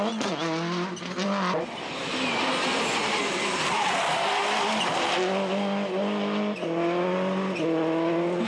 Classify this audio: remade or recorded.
recorded